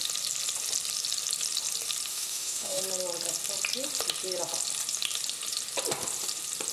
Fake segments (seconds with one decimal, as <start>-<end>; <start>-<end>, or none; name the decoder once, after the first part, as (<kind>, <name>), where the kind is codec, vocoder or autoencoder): 2.1-2.8 (autoencoder, DAC-VAE)